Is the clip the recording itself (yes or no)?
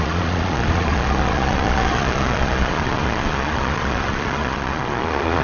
no